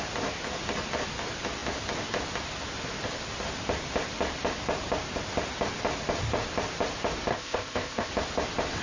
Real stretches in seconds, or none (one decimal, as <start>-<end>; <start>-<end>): 0.0-7.3; 8.1-8.8